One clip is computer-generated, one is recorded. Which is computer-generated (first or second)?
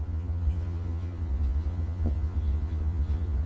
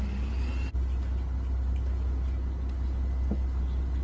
first